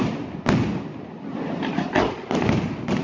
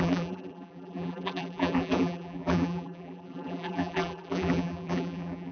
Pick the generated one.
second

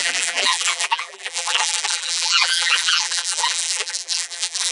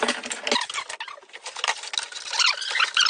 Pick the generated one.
first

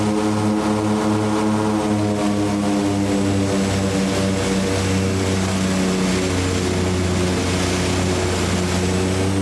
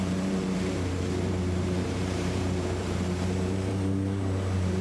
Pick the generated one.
second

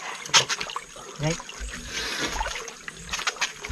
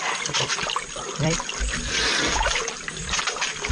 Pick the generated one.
second